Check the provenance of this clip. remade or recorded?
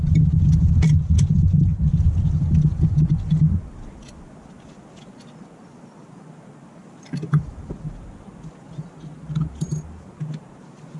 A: recorded